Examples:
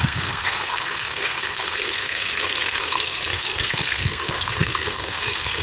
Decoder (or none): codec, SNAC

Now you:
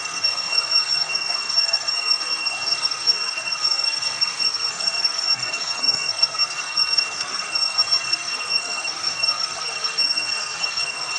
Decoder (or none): codec, SNAC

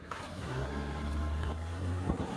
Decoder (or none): codec, SNAC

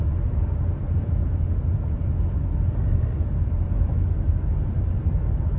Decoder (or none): none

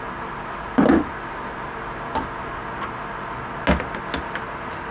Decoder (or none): none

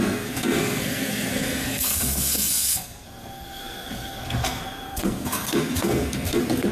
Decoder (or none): codec, SNAC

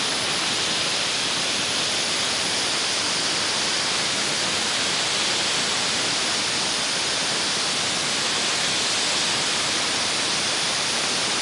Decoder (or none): none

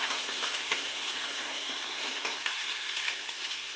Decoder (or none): codec, SNAC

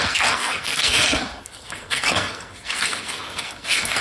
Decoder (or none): codec, SNAC